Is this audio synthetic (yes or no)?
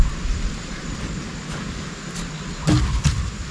no